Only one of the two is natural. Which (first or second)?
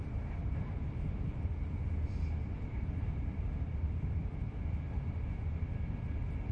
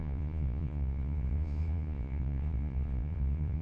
first